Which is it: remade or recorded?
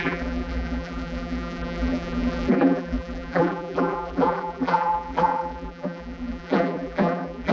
remade